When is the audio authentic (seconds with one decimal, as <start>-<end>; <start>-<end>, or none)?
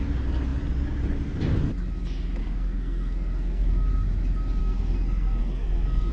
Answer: 0.0-2.4; 3.9-4.6